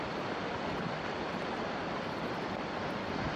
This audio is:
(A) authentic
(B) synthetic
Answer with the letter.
A